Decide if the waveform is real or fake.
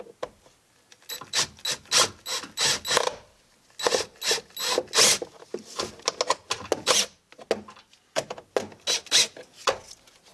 real